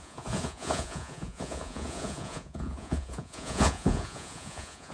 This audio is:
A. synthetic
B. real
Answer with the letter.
A